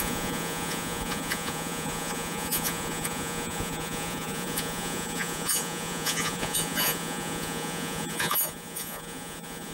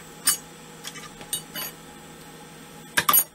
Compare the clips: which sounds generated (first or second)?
first